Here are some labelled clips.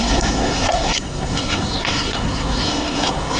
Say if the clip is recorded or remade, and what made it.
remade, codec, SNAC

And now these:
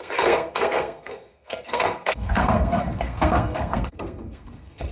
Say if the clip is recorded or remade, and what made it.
remade, codec, SNAC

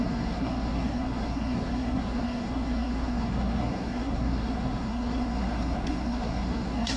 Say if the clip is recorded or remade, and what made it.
remade, codec, SNAC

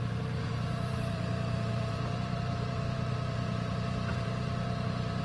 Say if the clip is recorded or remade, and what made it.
remade, vocoder, BigVGAN v2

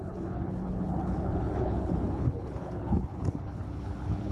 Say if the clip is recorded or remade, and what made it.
remade, codec, HILCodec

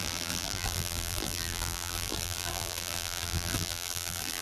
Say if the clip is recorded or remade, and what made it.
remade, vocoder, BigVGAN v2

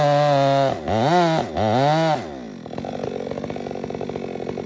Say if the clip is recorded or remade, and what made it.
recorded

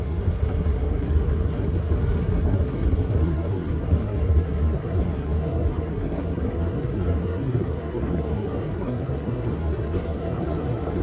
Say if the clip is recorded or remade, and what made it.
remade, codec, SNAC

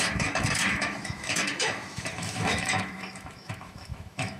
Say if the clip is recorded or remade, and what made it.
remade, autoencoder, DAC-VAE